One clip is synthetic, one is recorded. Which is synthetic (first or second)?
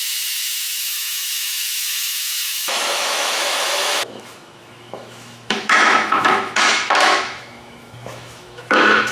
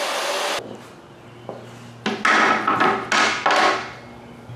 first